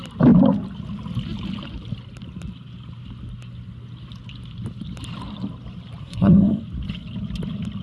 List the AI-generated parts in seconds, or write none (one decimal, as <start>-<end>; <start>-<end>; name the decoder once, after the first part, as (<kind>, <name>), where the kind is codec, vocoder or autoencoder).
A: 6.0-6.6 (codec, SNAC)